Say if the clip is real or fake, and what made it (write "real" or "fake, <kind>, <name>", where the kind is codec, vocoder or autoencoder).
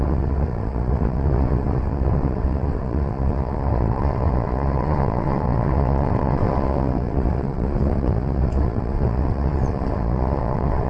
fake, vocoder, WaveNeXt